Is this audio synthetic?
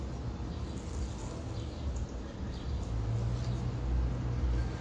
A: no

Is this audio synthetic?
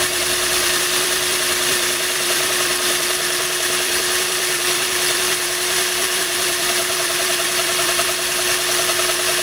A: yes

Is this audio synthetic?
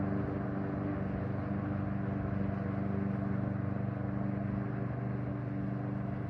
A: no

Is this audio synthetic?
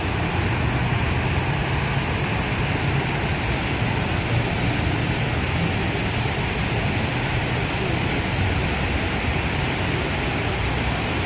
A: no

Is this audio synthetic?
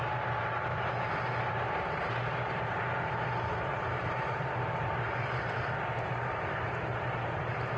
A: yes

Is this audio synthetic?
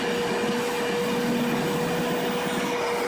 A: no